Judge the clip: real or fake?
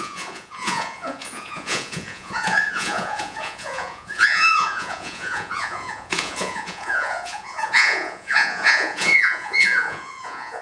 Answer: fake